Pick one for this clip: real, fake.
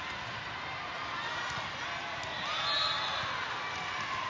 real